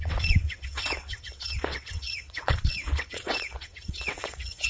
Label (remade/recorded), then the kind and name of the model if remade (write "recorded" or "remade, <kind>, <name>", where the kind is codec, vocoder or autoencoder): remade, vocoder, WaveNeXt